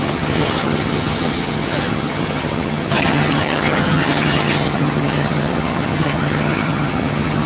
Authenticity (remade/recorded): remade